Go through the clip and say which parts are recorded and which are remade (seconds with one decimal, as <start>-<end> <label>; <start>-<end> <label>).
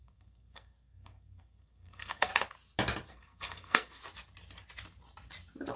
0.0-2.3 remade; 2.3-3.1 recorded; 3.1-4.0 remade; 4.0-5.8 recorded